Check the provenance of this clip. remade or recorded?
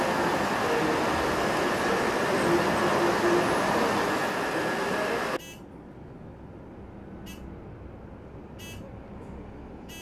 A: recorded